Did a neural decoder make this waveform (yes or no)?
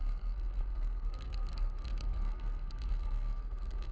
yes